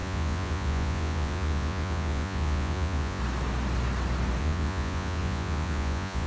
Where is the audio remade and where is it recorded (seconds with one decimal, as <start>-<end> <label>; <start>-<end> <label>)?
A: 0.0-3.2 remade; 3.2-4.4 recorded; 4.4-6.3 remade

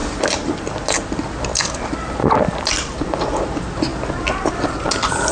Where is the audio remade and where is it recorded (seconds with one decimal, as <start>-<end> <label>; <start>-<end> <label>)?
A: 0.0-5.3 recorded